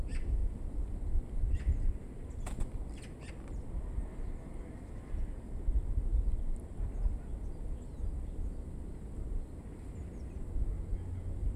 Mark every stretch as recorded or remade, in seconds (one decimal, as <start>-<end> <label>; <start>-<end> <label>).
0.0-11.6 recorded